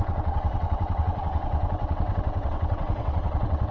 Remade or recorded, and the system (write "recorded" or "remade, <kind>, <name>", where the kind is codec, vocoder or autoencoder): remade, vocoder, WaveNeXt